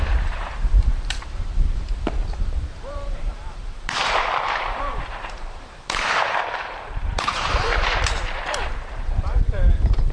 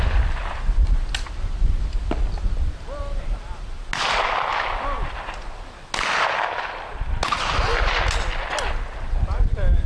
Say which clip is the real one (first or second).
second